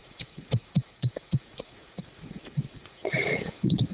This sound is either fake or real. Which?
fake